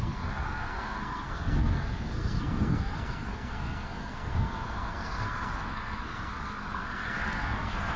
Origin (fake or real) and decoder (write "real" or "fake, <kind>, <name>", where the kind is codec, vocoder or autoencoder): fake, codec, SNAC